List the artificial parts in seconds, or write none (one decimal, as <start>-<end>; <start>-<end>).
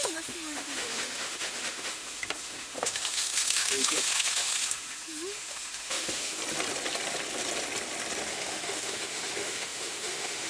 0.0-6.4; 8.3-10.5